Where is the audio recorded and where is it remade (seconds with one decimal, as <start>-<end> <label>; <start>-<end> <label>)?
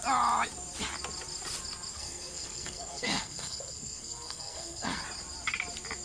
0.0-1.9 recorded; 1.9-5.0 remade; 5.0-6.0 recorded